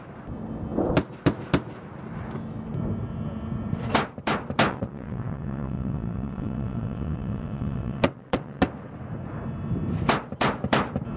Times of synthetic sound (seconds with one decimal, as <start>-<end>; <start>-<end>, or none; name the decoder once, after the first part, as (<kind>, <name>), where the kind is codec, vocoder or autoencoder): 4.7-8.6 (vocoder, WaveNeXt)